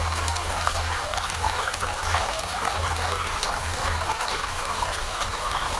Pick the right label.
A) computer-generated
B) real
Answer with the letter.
A